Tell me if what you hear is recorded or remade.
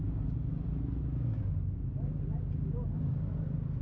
recorded